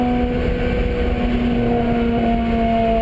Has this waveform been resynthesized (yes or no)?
no